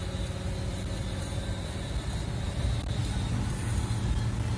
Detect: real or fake real